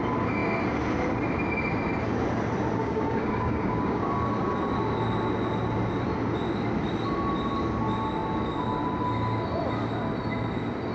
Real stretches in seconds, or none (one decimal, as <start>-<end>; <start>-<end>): 0.0-2.8; 4.3-10.9